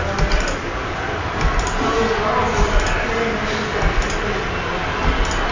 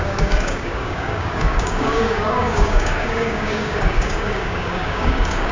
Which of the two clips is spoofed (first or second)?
second